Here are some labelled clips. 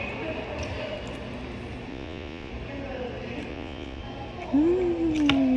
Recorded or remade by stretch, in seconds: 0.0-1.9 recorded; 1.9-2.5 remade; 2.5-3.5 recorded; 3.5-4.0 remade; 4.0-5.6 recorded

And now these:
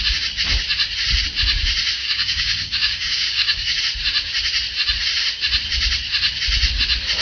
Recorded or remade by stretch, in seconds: 0.0-2.0 recorded; 2.0-3.8 remade; 3.8-7.2 recorded

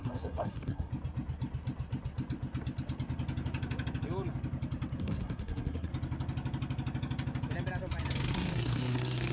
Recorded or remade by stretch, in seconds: 0.0-0.9 remade; 0.9-5.0 recorded; 5.0-5.9 remade; 5.9-8.3 recorded; 8.3-9.3 remade